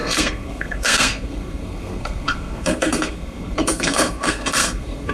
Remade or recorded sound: remade